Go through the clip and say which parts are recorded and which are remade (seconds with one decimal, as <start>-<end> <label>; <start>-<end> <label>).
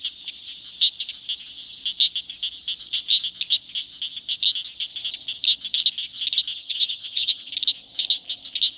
0.0-6.5 recorded; 6.5-7.5 remade; 7.5-8.8 recorded